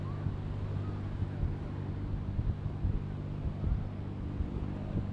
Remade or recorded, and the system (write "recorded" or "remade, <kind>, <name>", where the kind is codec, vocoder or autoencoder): recorded